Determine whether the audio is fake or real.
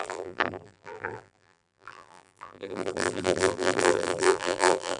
fake